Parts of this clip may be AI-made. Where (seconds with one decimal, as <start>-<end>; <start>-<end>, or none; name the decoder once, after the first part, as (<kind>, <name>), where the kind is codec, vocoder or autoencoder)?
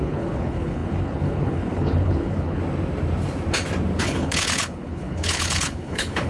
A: 0.0-2.6 (codec, HILCodec); 4.0-6.3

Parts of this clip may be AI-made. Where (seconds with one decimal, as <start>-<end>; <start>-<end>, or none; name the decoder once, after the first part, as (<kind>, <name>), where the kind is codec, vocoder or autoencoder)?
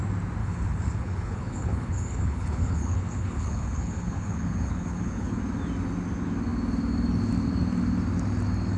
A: 0.4-5.4 (codec, HILCodec)